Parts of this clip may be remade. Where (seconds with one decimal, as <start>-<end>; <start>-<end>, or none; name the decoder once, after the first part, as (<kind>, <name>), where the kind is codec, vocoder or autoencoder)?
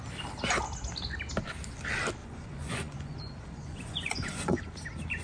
2.2-4.6 (vocoder, Vocos)